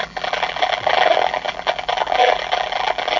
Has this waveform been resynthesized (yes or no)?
yes